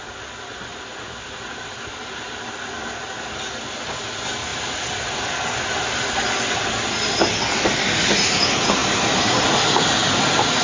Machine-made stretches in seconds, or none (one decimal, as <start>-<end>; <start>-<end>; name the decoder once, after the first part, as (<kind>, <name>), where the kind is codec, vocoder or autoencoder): 8.8-9.3 (vocoder, BigVGAN v2)